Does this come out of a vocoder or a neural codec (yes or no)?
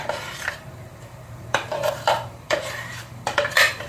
yes